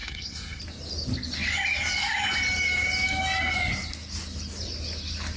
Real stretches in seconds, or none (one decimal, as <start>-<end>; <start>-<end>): 0.6-5.4